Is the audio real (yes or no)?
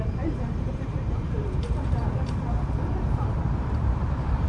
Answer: no